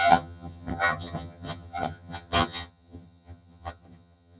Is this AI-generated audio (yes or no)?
yes